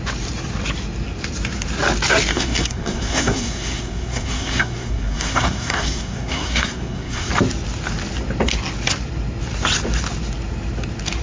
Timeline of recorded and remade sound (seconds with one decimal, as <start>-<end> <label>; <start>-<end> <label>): 0.0-2.3 recorded; 2.3-7.3 remade; 7.3-11.2 recorded